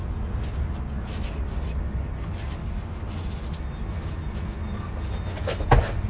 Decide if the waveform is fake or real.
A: real